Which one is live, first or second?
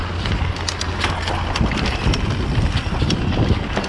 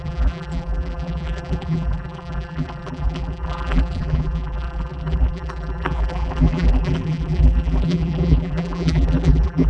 first